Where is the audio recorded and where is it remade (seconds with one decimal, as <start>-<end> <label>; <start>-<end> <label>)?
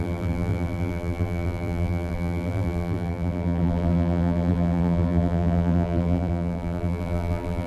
0.0-7.7 remade